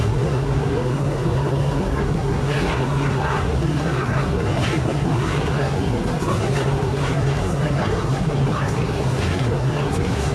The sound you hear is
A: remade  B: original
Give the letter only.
A